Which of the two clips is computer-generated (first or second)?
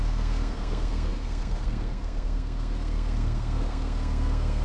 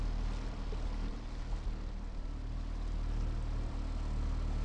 first